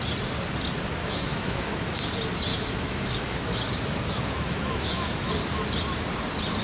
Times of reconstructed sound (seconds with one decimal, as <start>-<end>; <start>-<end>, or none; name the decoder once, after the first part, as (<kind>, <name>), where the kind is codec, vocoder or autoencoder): 1.0-2.1 (autoencoder, DAC-VAE); 2.5-5.3